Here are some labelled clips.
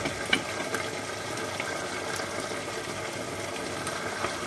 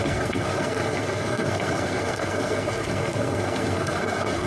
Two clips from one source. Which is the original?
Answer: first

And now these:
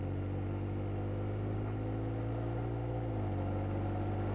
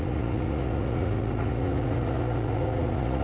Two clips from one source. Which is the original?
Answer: first